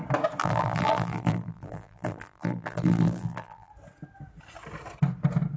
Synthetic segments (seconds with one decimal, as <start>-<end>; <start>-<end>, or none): 0.4-3.7